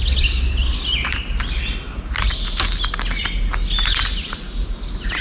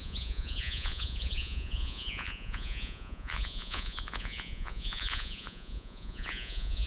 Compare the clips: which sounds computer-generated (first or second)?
second